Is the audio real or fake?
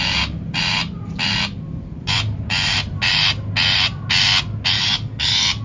real